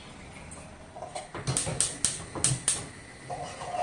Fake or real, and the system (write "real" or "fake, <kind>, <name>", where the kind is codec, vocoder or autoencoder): real